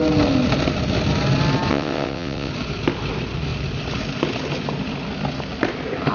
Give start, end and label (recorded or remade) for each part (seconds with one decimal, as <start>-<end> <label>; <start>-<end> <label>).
0.0-1.7 recorded; 1.7-2.5 remade; 2.5-6.1 recorded